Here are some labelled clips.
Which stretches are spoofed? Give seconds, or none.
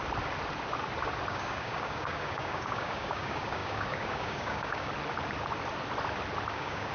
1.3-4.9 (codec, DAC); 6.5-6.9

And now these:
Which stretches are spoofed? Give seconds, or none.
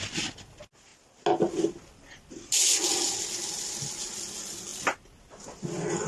none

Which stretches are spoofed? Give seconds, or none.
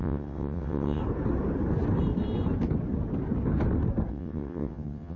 0.0-1.0 (vocoder, WaveNeXt); 4.1-5.2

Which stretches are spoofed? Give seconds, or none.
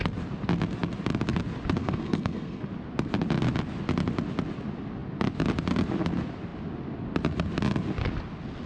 1.8-2.7 (codec, SNAC)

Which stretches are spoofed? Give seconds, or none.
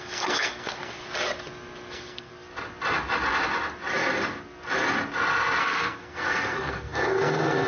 0.0-1.0 (codec, SNAC); 1.9-2.3; 5.6-7.7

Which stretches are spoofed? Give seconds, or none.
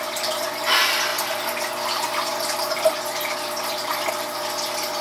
none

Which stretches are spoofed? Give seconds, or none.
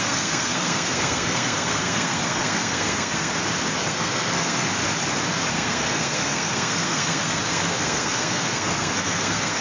0.0-3.3 (codec, SNAC); 3.8-4.7; 5.5-9.6